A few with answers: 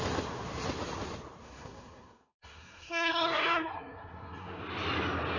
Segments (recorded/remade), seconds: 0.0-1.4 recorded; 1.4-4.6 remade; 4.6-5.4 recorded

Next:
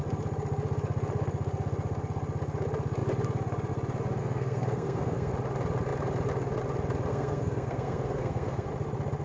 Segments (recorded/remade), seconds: 0.0-4.2 recorded; 4.2-5.3 remade; 5.3-7.1 recorded; 7.1-8.7 remade; 8.7-9.2 recorded

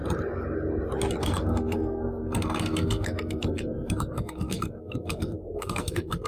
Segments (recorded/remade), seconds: 0.0-1.2 recorded; 1.2-6.3 remade

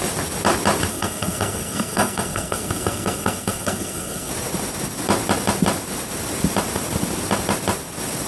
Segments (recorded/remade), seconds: 0.0-0.9 recorded; 0.9-4.3 remade; 4.3-8.3 recorded

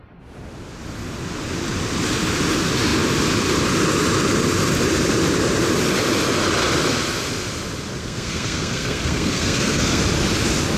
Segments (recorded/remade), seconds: 0.0-8.0 recorded; 8.0-10.0 remade; 10.0-10.8 recorded

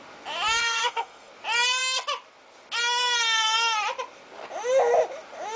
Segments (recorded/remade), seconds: 0.0-0.6 recorded; 0.6-1.3 remade; 1.3-5.6 recorded

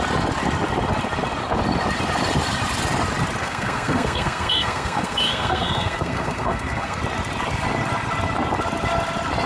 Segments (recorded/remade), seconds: 0.0-3.4 recorded; 3.4-7.0 remade; 7.0-9.5 recorded